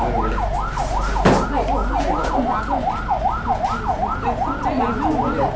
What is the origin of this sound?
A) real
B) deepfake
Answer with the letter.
A